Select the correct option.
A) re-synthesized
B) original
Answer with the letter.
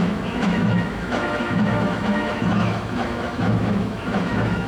A